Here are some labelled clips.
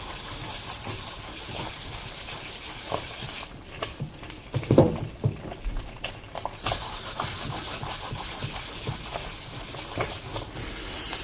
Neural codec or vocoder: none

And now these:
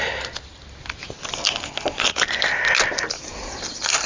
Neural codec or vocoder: none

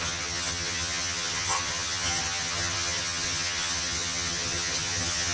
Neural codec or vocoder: vocoder, HiFi-GAN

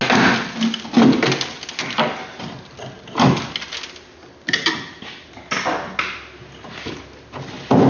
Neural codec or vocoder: none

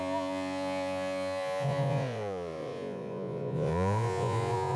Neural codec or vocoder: vocoder, Vocos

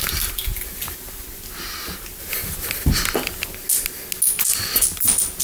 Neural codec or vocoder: none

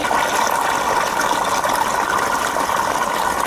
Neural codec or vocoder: none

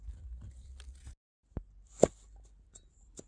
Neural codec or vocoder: none